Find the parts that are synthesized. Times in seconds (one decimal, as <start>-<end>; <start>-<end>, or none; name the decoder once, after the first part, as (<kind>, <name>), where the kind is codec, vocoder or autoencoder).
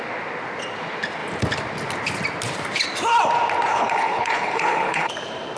3.7-5.1 (codec, HILCodec)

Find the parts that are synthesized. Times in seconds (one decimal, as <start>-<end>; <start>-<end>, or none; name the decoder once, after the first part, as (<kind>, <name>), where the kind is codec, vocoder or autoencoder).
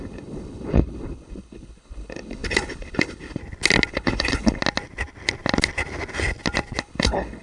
0.0-3.4 (codec, HILCodec); 3.9-4.6; 6.8-7.4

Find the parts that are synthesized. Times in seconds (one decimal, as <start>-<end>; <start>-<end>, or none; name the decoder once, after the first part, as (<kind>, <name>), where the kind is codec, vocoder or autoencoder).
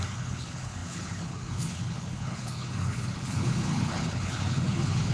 0.0-5.1 (codec, HILCodec)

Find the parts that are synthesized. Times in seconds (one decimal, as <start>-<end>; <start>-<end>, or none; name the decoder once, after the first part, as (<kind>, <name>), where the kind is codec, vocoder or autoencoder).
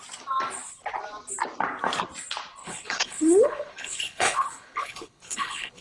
2.6-5.8 (codec, HILCodec)